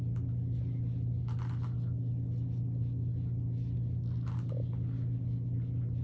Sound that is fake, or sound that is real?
real